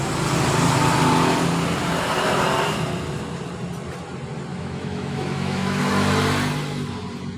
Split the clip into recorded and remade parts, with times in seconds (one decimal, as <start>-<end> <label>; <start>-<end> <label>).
0.0-4.5 recorded; 4.5-5.8 remade; 5.8-7.4 recorded